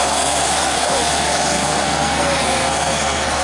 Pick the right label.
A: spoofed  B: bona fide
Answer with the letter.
A